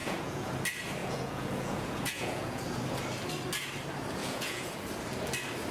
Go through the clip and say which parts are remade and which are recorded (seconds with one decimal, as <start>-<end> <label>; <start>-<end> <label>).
0.0-0.5 remade; 0.5-1.0 recorded; 1.0-2.6 remade; 2.6-4.2 recorded; 4.2-4.8 remade; 4.8-5.7 recorded

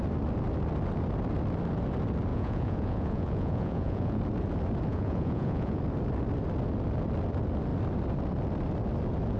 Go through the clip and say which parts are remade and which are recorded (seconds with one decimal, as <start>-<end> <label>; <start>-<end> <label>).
0.0-2.3 recorded; 2.3-4.2 remade; 4.2-4.9 recorded; 4.9-5.8 remade; 5.8-9.4 recorded